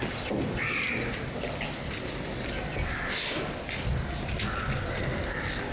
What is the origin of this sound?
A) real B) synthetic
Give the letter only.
A